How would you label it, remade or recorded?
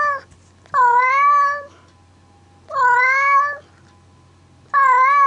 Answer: recorded